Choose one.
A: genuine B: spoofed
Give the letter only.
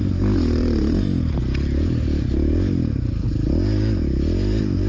A